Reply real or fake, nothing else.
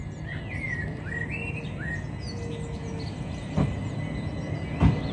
real